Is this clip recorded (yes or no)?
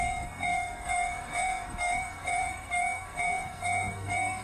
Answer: no